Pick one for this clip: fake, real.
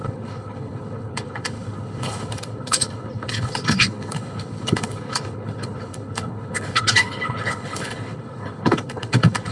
fake